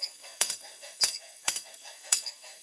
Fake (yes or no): yes